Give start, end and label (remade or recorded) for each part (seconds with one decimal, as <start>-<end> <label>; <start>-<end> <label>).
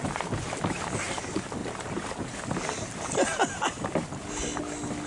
0.0-1.6 recorded; 1.6-2.4 remade; 2.4-5.1 recorded